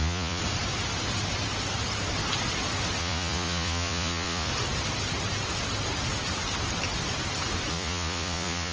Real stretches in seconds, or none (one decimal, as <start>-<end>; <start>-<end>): 0.4-3.0; 4.5-7.7